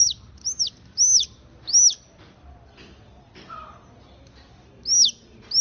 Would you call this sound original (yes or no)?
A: yes